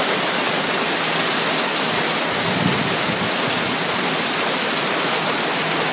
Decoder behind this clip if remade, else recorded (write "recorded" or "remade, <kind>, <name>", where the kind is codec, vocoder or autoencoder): recorded